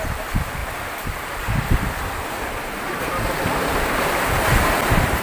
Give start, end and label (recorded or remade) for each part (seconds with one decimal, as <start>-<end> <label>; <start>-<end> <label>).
0.0-5.2 recorded